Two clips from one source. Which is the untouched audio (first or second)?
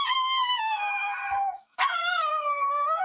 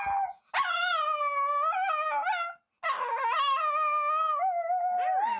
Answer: second